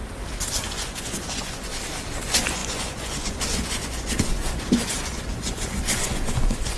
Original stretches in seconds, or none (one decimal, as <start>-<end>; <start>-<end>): 0.0-0.6; 1.7-2.2